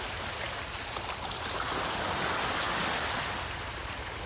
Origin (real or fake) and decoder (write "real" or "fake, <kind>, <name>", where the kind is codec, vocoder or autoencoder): real